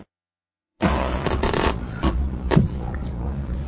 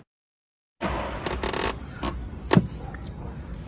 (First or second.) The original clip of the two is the second